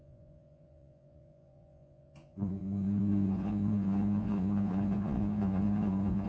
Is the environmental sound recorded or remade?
remade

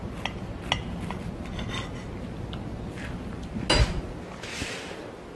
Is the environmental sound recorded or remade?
recorded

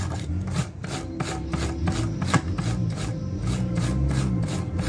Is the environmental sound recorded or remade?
recorded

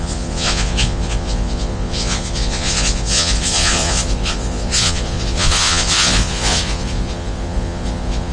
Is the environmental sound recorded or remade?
remade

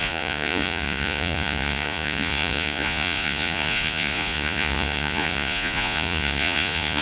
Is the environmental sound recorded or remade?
remade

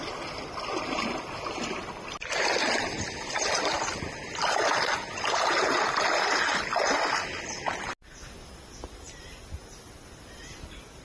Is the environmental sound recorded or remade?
recorded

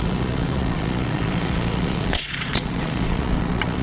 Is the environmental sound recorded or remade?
remade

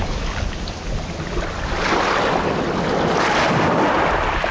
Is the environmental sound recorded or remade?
recorded